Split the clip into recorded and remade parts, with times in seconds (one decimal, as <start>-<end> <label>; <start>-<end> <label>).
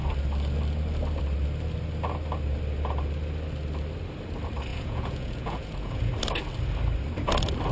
0.0-4.7 recorded; 4.7-6.1 remade; 6.1-7.7 recorded